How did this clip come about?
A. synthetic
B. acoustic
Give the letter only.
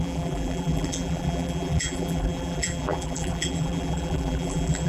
A